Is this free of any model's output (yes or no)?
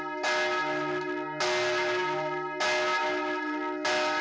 yes